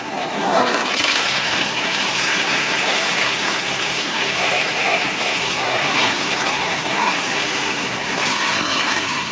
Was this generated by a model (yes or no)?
yes